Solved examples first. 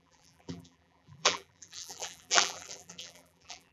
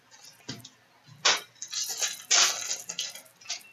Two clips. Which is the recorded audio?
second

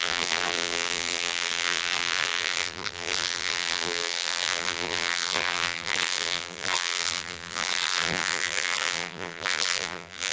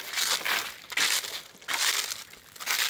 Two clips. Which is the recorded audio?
second